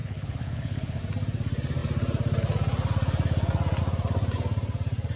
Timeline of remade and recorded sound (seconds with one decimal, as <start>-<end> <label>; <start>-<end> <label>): 0.0-1.0 remade; 1.0-5.2 recorded